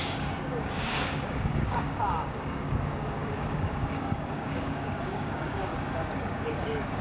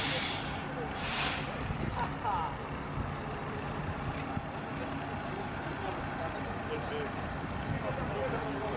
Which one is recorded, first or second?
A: second